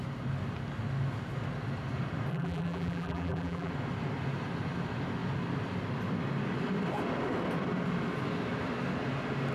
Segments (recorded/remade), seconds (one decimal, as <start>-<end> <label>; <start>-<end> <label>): 0.0-2.3 recorded; 2.3-3.7 remade; 3.7-9.5 recorded